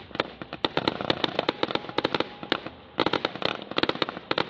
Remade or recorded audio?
recorded